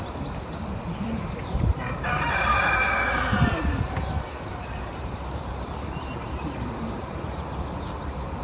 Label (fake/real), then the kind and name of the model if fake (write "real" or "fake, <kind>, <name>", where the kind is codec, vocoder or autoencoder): fake, vocoder, BigVGAN v2